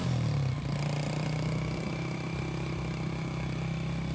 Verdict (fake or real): real